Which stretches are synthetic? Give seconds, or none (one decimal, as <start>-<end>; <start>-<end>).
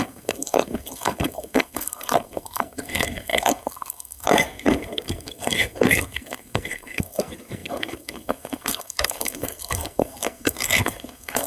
0.0-11.5